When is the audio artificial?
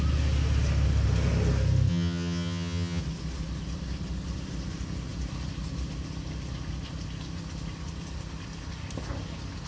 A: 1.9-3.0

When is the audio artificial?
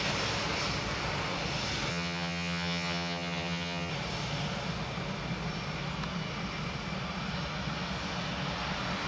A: 1.9-3.9